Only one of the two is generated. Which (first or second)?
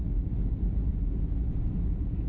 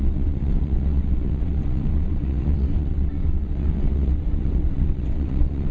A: second